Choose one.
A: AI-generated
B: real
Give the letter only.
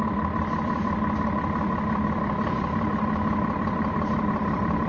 A